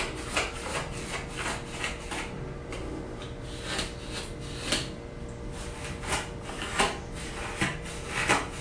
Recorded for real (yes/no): yes